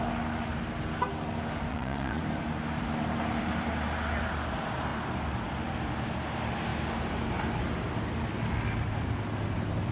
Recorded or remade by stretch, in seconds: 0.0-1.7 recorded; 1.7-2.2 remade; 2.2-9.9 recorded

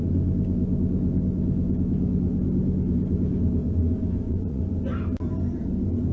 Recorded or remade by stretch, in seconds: 0.0-3.6 recorded; 3.6-4.6 remade; 4.6-6.1 recorded

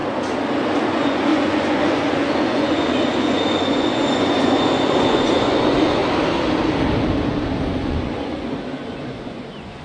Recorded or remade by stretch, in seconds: 0.0-0.9 recorded; 0.9-6.0 remade; 6.0-7.7 recorded; 7.7-9.8 remade

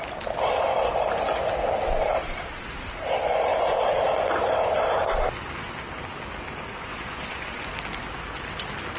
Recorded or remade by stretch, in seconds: 0.0-6.8 recorded; 6.8-7.7 remade; 7.7-9.0 recorded

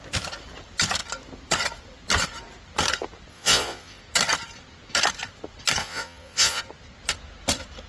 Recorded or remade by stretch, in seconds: 0.0-3.3 recorded; 3.3-4.0 remade; 4.0-5.8 recorded; 5.8-6.6 remade; 6.6-7.9 recorded

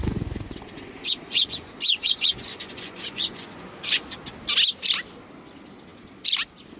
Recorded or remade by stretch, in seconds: 0.0-4.1 remade; 4.1-6.8 recorded

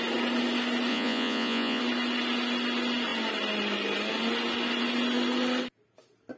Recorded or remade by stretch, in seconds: 0.0-0.9 recorded; 0.9-1.8 remade; 1.8-6.4 recorded

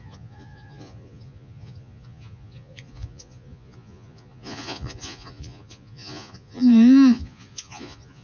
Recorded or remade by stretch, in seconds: 0.0-8.2 remade